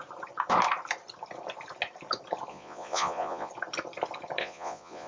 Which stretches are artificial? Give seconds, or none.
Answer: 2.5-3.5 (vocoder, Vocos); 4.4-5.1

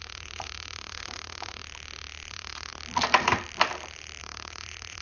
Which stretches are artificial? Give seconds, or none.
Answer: 0.0-1.6 (vocoder, Vocos); 2.3-2.7; 4.2-5.0

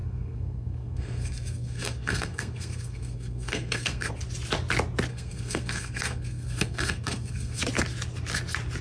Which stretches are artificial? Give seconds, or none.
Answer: 0.0-4.1 (codec, SNAC); 5.1-7.6

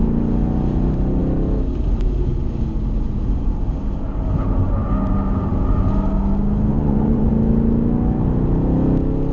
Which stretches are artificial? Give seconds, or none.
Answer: 6.7-7.3 (vocoder, Vocos)

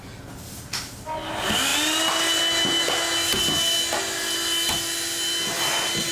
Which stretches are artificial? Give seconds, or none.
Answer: none